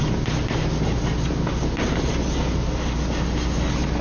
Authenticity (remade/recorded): recorded